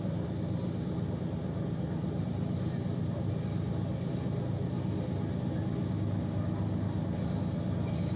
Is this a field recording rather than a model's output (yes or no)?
yes